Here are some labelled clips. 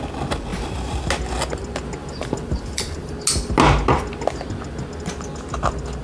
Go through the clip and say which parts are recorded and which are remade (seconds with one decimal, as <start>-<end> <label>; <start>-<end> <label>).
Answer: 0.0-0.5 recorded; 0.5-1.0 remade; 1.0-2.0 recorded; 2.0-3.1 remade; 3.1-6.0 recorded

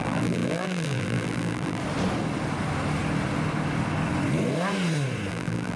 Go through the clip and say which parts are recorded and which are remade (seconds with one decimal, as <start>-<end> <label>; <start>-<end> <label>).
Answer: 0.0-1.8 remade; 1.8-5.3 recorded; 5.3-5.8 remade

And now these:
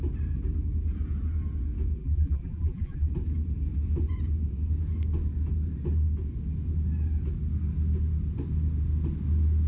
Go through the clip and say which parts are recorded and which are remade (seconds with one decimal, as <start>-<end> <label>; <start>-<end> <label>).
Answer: 0.0-2.0 recorded; 2.0-3.1 remade; 3.1-9.7 recorded

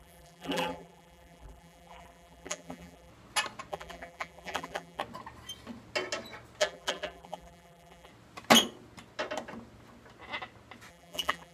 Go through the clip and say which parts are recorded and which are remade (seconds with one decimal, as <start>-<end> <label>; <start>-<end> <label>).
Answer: 0.0-3.1 remade; 3.1-3.7 recorded; 3.7-5.0 remade; 5.0-6.6 recorded; 6.6-8.1 remade; 8.1-10.9 recorded; 10.9-11.5 remade

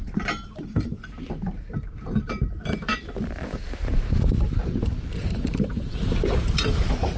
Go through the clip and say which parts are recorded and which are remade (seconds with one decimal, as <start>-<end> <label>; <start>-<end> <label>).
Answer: 0.0-4.6 remade; 4.6-5.2 recorded; 5.2-7.2 remade

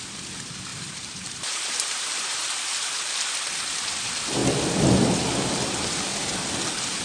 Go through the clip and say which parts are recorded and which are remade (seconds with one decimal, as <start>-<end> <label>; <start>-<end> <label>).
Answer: 0.0-0.7 recorded; 0.7-3.1 remade; 3.1-7.0 recorded